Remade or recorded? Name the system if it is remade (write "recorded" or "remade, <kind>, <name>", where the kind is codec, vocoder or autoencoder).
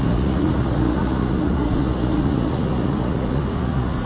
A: remade, vocoder, Vocos